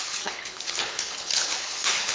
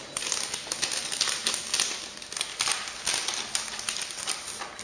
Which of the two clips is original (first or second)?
second